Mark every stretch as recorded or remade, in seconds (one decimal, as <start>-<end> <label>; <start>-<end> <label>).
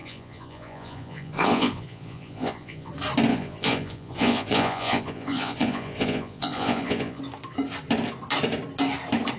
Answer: 0.0-2.9 remade; 2.9-3.3 recorded; 3.3-7.2 remade; 7.2-9.4 recorded